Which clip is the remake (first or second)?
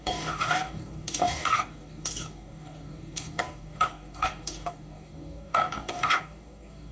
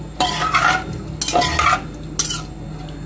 first